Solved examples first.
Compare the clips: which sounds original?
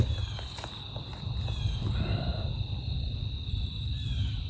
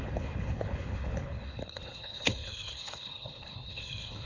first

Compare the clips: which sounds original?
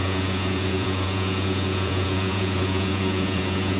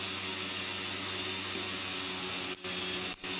second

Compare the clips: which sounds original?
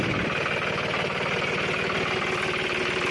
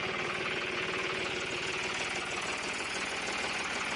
first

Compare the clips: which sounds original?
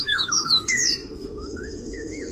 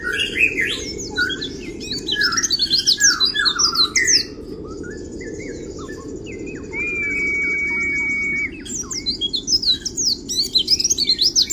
second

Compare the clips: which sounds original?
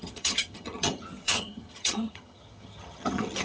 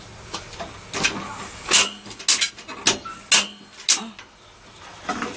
second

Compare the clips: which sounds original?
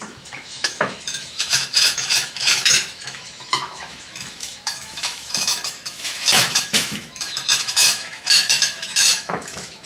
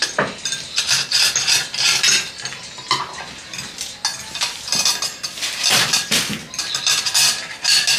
second